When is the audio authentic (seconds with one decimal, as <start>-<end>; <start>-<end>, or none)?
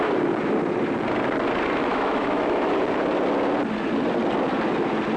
0.0-1.9; 2.7-5.2